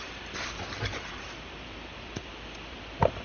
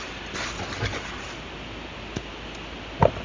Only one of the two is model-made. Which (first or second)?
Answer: first